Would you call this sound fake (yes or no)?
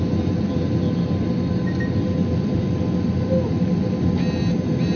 no